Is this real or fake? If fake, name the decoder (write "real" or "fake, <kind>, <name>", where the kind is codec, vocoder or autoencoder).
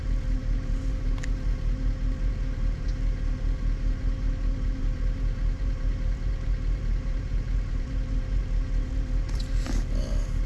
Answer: fake, vocoder, BigVGAN v2